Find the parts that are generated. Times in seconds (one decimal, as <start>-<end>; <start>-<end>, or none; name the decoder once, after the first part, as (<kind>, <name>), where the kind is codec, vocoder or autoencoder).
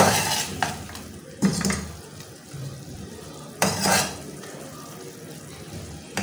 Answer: 0.0-6.2 (vocoder, BigVGAN v2)